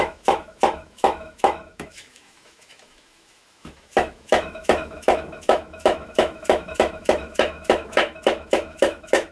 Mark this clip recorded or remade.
remade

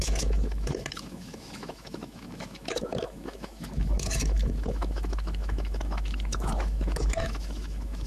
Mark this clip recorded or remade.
remade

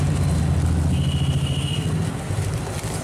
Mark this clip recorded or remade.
recorded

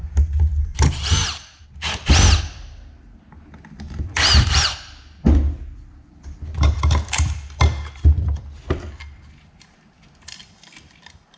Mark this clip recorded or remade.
recorded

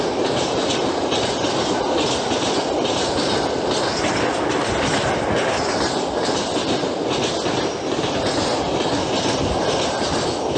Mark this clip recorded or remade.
recorded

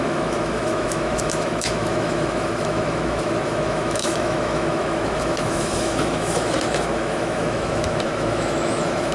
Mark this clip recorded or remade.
remade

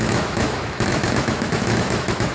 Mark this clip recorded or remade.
remade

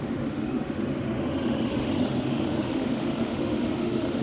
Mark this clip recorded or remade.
remade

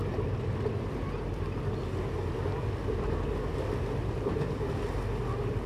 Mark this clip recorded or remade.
recorded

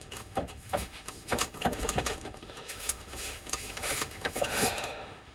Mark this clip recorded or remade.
remade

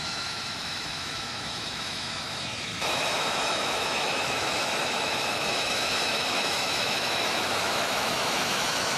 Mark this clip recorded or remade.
remade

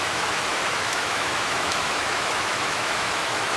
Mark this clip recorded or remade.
remade